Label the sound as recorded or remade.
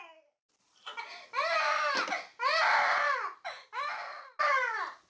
recorded